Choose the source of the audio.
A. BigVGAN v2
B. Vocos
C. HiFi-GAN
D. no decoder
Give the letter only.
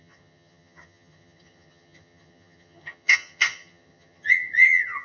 C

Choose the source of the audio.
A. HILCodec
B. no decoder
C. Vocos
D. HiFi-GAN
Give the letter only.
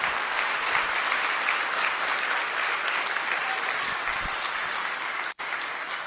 B